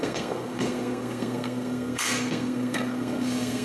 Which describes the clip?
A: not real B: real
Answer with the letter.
A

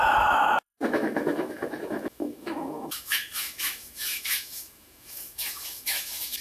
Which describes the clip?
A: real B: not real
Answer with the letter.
B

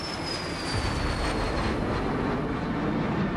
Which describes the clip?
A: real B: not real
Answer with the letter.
A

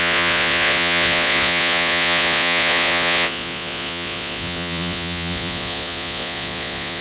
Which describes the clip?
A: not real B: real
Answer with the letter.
A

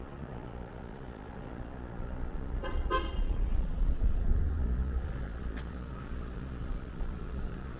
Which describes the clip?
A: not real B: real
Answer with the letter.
A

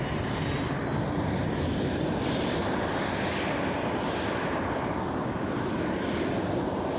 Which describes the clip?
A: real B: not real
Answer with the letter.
A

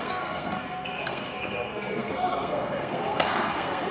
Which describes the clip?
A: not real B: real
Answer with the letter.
A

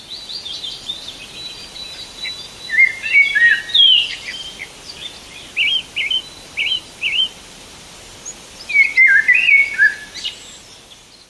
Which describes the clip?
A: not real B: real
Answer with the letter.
B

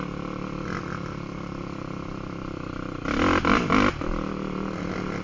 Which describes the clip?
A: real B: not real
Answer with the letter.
A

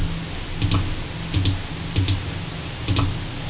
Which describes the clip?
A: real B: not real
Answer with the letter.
A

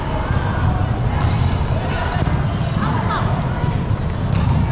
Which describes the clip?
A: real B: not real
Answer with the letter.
A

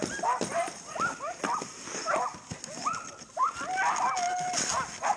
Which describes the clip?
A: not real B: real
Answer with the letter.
B